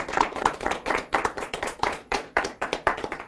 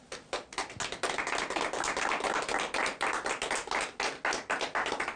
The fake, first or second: first